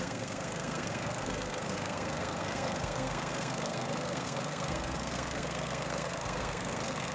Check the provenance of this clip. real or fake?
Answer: fake